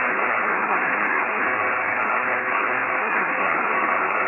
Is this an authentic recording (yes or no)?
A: no